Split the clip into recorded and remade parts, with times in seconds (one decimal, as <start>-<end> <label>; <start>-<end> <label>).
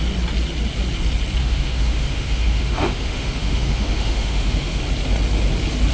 0.0-1.4 recorded; 1.4-4.8 remade; 4.8-5.9 recorded